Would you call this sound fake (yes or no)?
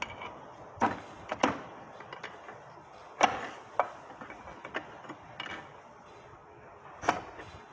no